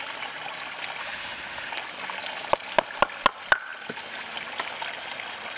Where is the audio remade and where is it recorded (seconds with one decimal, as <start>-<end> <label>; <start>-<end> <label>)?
0.0-1.0 recorded; 1.0-1.7 remade; 1.7-5.6 recorded